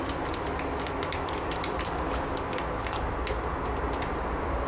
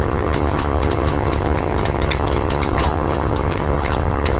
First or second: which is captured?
first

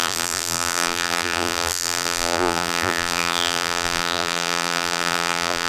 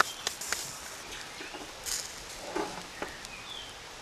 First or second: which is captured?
second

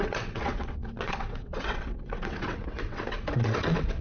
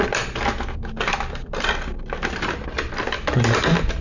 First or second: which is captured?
second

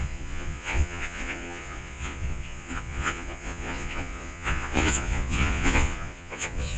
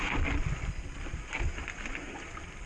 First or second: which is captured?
second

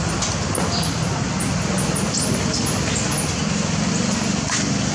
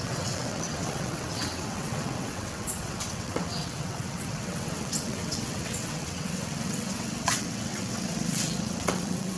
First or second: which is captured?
first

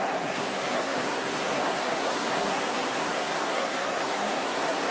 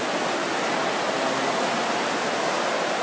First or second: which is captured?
second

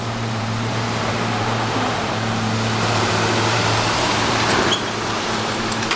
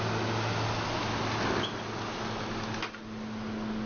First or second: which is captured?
second